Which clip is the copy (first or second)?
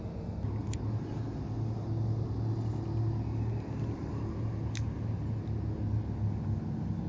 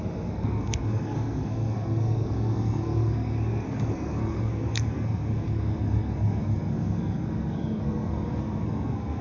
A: second